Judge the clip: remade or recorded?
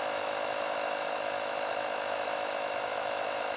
remade